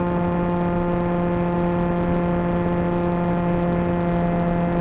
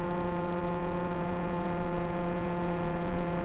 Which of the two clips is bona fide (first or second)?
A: first